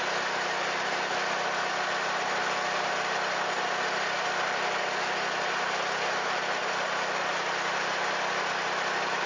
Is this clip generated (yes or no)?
no